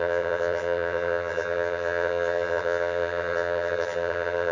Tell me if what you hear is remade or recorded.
remade